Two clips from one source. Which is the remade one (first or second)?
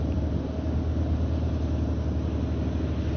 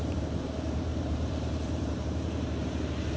second